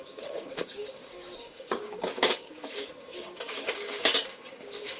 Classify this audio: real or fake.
fake